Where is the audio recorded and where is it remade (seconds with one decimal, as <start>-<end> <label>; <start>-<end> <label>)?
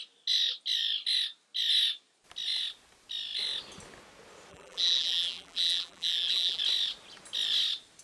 0.0-4.5 recorded; 4.5-6.6 remade; 6.6-8.0 recorded